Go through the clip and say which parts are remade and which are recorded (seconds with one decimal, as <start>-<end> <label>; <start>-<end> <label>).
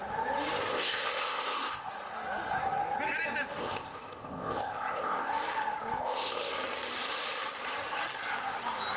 0.0-0.7 recorded; 0.7-1.9 remade; 1.9-3.6 recorded; 3.6-5.3 remade; 5.3-6.0 recorded; 6.0-6.5 remade; 6.5-9.0 recorded